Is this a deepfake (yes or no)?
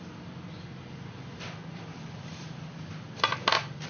no